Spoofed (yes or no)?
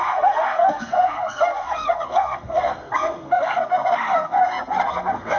yes